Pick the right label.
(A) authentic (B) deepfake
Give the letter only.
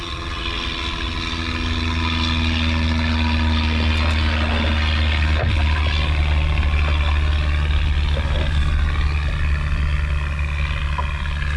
A